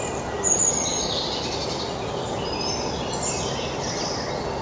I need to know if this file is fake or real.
real